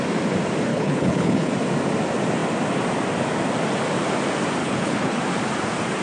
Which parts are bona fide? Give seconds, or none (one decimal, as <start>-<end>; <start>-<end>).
0.0-0.7; 1.5-4.6; 5.2-6.0